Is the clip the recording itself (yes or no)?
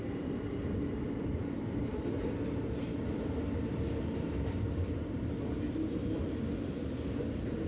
yes